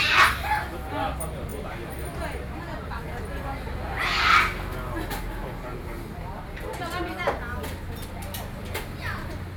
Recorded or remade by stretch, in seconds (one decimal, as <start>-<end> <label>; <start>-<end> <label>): 0.0-9.6 recorded